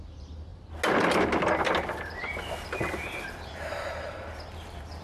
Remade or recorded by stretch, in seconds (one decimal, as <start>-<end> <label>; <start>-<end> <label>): 0.0-0.5 remade; 0.5-2.9 recorded; 2.9-5.0 remade